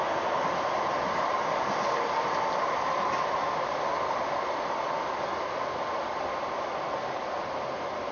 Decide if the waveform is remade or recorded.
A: recorded